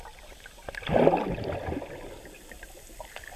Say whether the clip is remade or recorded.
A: recorded